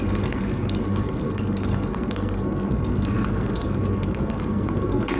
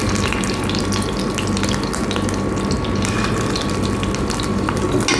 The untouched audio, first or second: second